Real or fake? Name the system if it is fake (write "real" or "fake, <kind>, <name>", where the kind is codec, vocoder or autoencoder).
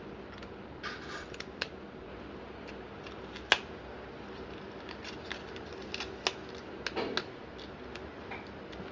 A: real